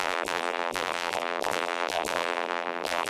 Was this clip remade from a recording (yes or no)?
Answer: yes